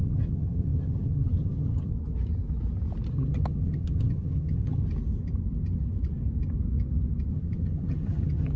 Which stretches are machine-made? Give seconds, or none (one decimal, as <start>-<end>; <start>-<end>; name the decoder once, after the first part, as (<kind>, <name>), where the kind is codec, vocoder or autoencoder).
0.0-1.9 (vocoder, HiFi-GAN); 3.1-4.8; 7.3-8.6